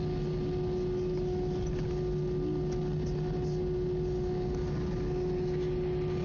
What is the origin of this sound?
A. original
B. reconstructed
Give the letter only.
A